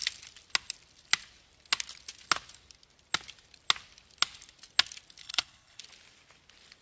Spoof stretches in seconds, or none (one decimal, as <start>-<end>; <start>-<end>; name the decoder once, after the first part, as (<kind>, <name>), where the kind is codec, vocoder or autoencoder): 5.2-5.8 (codec, HILCodec)